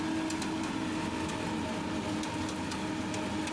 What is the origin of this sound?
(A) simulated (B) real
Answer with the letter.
B